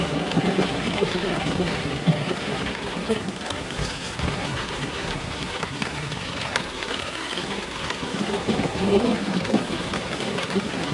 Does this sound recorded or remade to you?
remade